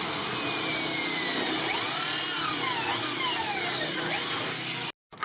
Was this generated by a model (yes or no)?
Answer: no